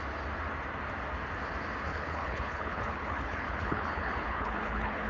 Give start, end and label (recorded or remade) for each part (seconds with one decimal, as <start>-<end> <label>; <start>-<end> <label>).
0.0-1.9 recorded; 1.9-5.1 remade